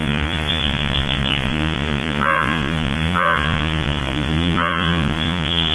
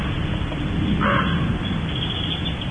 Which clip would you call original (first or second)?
second